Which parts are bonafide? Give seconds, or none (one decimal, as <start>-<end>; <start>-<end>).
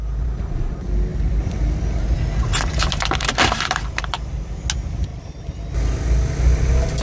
0.0-1.1; 1.6-2.5; 4.6-5.1; 5.7-7.0